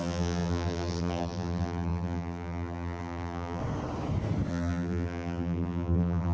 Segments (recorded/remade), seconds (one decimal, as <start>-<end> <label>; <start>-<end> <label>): 0.0-3.6 remade; 3.6-4.5 recorded; 4.5-6.3 remade